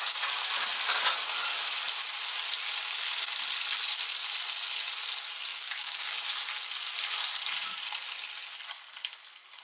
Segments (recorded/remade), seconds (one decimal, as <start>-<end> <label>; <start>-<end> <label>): 0.0-5.5 recorded; 5.5-6.3 remade; 6.3-9.6 recorded